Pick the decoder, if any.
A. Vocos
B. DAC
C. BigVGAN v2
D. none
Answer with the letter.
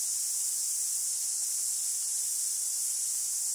D